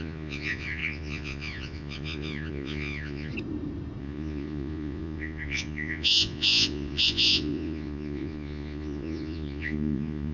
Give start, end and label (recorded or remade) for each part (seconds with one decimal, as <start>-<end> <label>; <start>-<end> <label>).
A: 0.0-3.3 remade; 3.3-4.0 recorded; 4.0-10.3 remade